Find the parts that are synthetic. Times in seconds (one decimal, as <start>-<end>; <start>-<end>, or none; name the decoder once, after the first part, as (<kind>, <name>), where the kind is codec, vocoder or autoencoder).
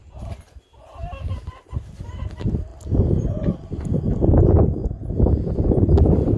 0.0-1.0 (vocoder, BigVGAN v2); 1.6-4.8; 5.5-6.4